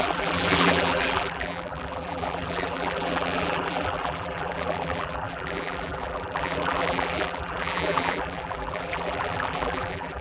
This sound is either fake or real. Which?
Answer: fake